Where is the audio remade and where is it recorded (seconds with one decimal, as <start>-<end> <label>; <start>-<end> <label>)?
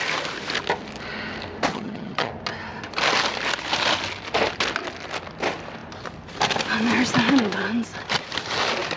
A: 0.0-1.7 recorded; 1.7-2.3 remade; 2.3-9.0 recorded